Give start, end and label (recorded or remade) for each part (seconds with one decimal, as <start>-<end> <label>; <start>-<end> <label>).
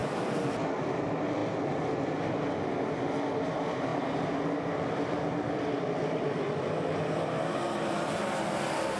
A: 0.0-0.8 remade; 0.8-3.9 recorded; 3.9-7.6 remade; 7.6-9.0 recorded